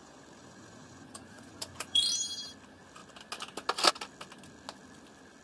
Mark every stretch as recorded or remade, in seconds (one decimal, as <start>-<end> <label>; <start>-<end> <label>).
0.0-2.1 remade; 2.1-5.4 recorded